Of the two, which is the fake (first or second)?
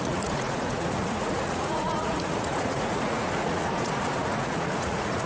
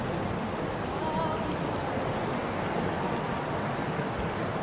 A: first